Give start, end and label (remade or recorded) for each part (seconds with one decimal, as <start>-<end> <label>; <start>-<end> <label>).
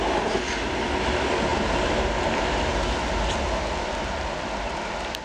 0.0-5.2 recorded